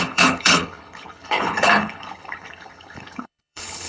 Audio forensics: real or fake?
fake